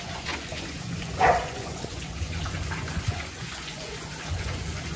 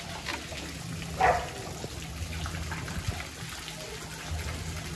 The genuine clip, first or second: second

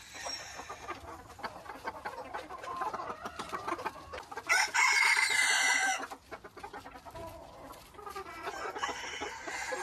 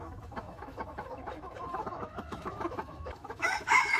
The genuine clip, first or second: first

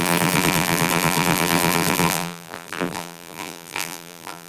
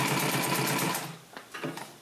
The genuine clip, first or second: second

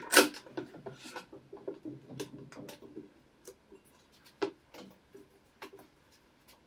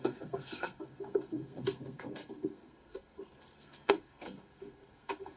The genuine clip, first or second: first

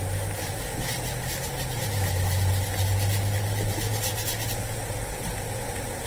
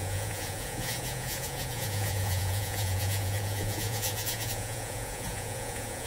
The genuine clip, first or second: first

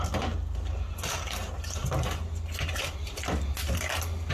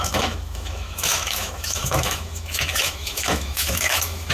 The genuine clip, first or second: first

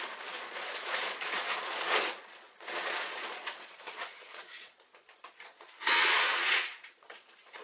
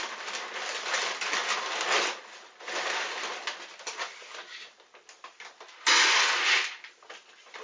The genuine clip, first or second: second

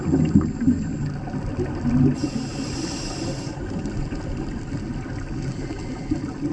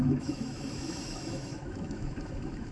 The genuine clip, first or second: first